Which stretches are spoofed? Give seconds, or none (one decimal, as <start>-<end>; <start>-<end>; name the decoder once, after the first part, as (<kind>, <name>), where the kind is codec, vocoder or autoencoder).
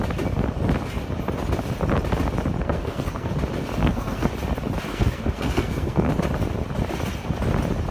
2.6-3.3 (codec, SNAC); 3.8-4.3; 4.9-6.1